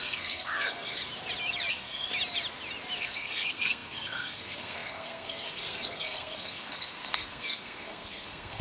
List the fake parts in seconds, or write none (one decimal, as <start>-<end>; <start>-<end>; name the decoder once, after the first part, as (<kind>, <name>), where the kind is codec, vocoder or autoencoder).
0.0-1.0 (codec, SNAC); 1.7-2.1; 3.0-8.6